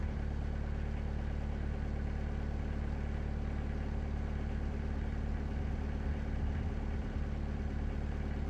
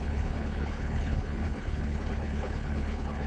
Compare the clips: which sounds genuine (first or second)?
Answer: first